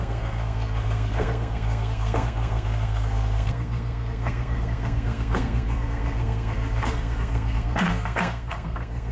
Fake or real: fake